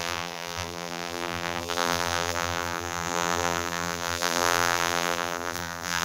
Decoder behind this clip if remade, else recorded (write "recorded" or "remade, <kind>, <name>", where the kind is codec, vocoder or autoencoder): remade, vocoder, BigVGAN v2